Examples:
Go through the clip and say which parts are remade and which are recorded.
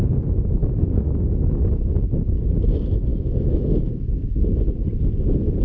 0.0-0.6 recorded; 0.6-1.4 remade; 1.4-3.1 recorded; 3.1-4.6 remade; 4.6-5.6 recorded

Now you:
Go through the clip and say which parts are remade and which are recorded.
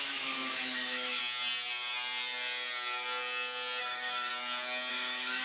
0.0-1.2 remade; 1.2-3.8 recorded; 3.8-4.3 remade; 4.3-4.9 recorded; 4.9-5.4 remade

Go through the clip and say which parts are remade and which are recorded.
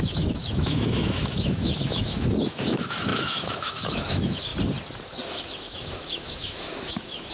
0.0-4.5 remade; 4.5-5.3 recorded; 5.3-7.3 remade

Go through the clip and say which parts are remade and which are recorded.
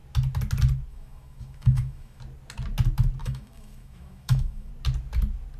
0.0-0.9 recorded; 0.9-2.2 remade; 2.2-3.2 recorded; 3.2-4.7 remade; 4.7-5.6 recorded